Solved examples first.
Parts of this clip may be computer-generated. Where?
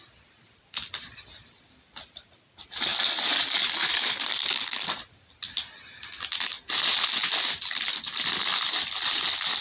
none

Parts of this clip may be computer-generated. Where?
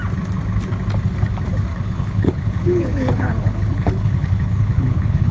1.7-5.3 (codec, HILCodec)